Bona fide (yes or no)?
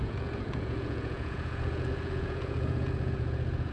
no